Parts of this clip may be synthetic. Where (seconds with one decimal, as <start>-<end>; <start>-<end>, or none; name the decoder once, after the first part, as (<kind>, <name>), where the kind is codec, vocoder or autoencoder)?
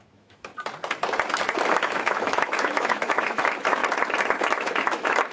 0.0-0.5 (autoencoder, DAC-VAE); 1.7-3.8; 4.5-5.3